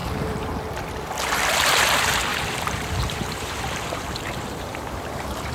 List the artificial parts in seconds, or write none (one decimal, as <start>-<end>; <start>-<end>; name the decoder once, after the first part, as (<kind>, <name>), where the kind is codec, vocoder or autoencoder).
0.0-0.5 (vocoder, BigVGAN v2); 2.3-5.5